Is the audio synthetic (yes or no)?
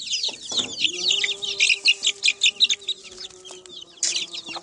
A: no